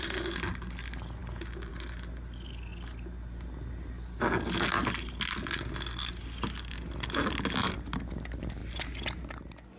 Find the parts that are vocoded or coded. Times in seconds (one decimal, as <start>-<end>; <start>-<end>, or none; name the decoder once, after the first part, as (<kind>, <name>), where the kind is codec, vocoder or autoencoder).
none